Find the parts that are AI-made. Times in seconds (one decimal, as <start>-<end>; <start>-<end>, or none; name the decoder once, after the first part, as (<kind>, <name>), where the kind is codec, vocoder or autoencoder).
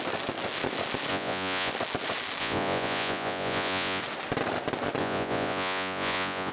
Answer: 1.1-1.7 (vocoder, Vocos); 2.4-4.0; 5.0-6.5